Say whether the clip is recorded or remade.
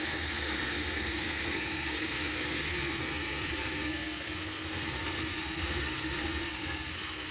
remade